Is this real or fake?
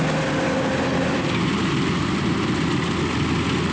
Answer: real